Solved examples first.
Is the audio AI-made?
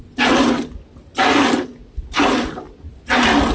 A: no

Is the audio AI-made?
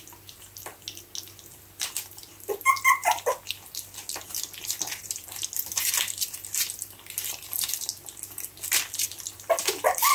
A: no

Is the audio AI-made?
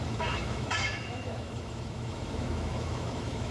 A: yes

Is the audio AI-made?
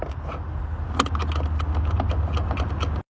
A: no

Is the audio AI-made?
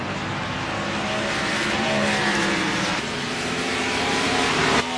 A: yes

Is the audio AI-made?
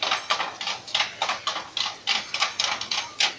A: no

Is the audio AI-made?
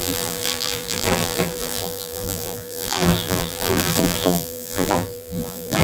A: yes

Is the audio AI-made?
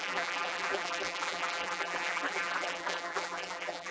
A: yes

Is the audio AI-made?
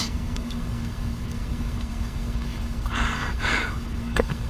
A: yes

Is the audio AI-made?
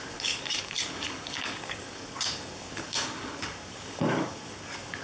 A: yes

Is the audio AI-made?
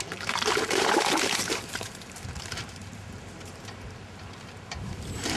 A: yes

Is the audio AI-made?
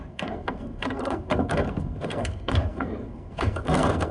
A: yes